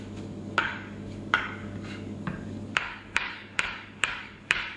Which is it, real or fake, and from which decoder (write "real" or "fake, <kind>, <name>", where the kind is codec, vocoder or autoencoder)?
fake, codec, DAC